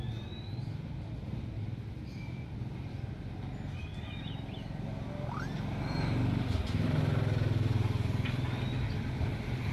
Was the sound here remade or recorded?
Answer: recorded